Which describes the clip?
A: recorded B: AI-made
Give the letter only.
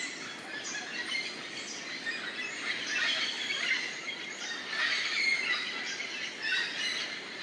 A